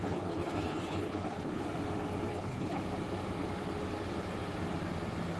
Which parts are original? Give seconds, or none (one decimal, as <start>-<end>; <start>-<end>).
1.6-2.3; 2.8-5.4